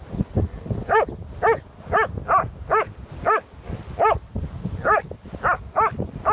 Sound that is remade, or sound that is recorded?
recorded